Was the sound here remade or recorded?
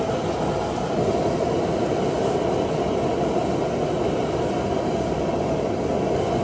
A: recorded